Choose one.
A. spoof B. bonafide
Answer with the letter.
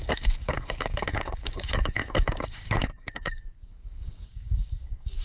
A